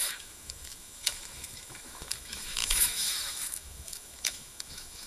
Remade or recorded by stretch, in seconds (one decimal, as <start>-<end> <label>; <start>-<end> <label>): 0.0-5.1 remade